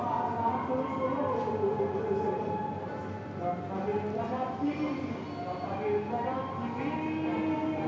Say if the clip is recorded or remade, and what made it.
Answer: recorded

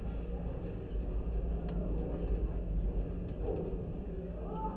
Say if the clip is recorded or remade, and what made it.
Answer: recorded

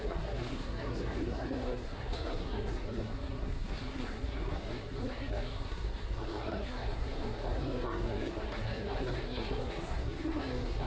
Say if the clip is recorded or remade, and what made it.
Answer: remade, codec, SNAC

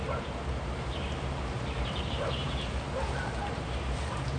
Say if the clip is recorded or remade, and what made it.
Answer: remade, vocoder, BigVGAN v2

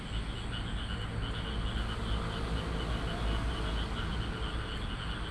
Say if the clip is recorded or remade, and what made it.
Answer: recorded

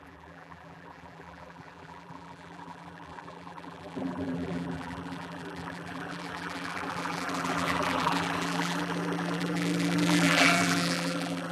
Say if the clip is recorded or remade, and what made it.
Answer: remade, vocoder, BigVGAN v2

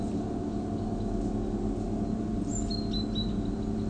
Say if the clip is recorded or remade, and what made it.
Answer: recorded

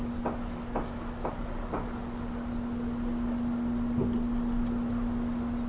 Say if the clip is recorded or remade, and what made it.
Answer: recorded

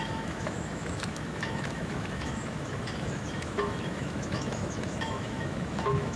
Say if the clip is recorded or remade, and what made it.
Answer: remade, autoencoder, DAC-VAE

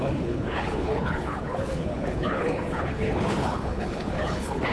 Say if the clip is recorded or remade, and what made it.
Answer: remade, codec, HILCodec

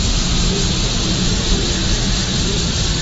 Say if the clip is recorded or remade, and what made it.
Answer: remade, vocoder, BigVGAN v2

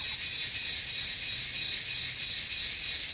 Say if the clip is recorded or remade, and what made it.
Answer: recorded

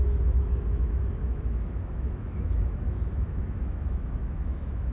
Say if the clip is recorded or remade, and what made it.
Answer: remade, autoencoder, DAC-VAE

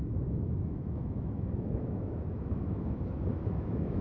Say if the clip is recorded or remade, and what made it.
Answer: remade, autoencoder, DAC-VAE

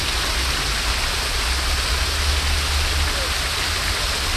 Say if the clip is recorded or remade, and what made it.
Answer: recorded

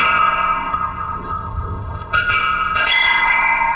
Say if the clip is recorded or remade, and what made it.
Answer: remade, codec, ZipCodec